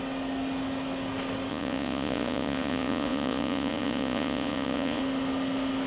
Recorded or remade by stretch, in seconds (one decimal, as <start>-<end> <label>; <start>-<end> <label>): 0.0-1.5 recorded; 1.5-5.0 remade; 5.0-5.9 recorded